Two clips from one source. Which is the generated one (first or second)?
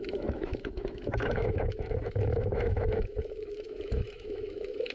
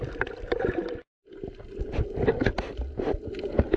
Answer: first